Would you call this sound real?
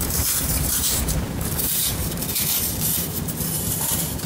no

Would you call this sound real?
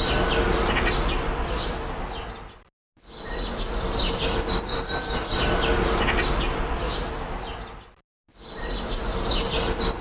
yes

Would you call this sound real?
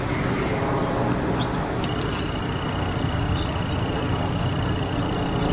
yes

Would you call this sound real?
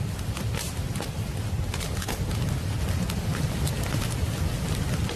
yes